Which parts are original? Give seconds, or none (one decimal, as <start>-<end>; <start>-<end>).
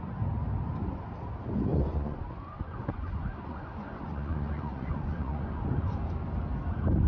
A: 0.0-1.7; 6.0-7.1